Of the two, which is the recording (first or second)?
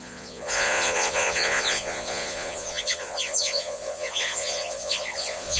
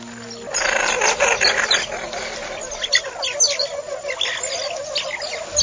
second